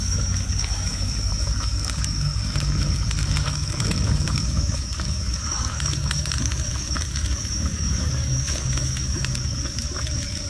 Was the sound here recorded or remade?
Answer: remade